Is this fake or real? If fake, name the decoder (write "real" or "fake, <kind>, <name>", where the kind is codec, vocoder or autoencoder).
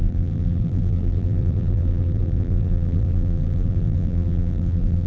fake, vocoder, BigVGAN v2